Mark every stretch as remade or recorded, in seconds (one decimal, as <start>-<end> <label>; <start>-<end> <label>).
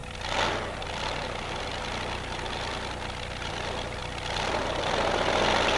0.0-5.8 recorded